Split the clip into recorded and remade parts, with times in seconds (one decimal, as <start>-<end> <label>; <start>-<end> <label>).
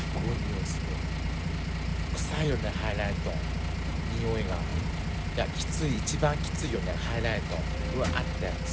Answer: 0.0-1.9 recorded; 1.9-3.3 remade; 3.3-4.7 recorded; 4.7-7.8 remade; 7.8-8.7 recorded